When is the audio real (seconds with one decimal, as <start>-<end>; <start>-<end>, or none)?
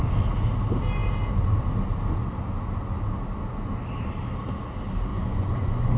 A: 0.0-5.1